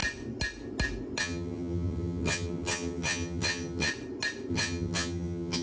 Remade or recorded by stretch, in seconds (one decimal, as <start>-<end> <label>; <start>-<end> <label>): 0.0-1.2 recorded; 1.2-3.9 remade; 3.9-4.5 recorded; 4.5-5.6 remade